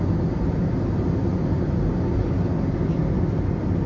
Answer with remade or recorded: recorded